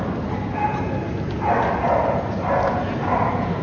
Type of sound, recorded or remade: recorded